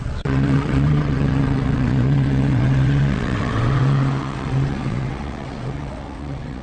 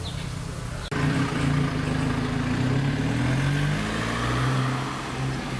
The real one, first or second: second